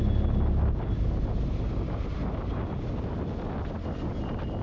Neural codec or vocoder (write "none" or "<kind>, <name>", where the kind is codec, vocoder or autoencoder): none